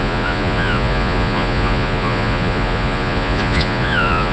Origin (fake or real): fake